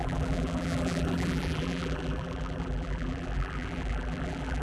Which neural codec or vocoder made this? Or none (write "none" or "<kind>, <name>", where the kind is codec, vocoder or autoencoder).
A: vocoder, BigVGAN v2